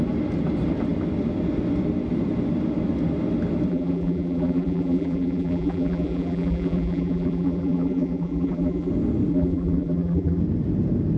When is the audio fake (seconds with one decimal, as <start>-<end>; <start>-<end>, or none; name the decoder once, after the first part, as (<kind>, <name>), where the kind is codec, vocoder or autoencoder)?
3.7-8.9 (vocoder, BigVGAN v2); 9.3-10.4